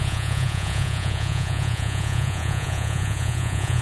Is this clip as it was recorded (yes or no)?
no